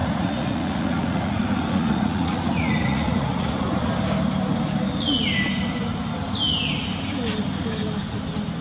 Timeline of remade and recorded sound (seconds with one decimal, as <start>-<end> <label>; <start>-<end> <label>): 0.0-3.8 remade; 3.8-8.6 recorded